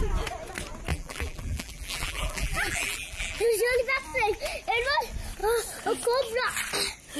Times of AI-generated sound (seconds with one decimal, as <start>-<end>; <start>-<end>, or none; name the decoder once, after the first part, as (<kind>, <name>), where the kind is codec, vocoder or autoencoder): 0.9-3.5 (vocoder, BigVGAN v2)